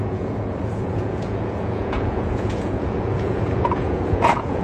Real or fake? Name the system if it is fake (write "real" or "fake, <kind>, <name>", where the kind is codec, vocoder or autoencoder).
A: fake, vocoder, Vocos